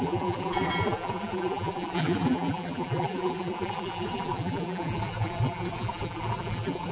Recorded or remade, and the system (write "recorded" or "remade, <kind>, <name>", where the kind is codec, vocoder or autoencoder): remade, vocoder, BigVGAN v2